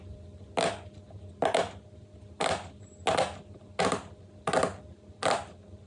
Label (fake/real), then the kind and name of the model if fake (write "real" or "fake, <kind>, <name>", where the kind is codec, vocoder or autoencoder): real